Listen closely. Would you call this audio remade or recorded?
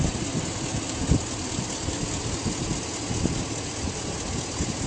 recorded